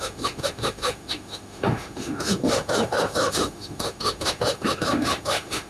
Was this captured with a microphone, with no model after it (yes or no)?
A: no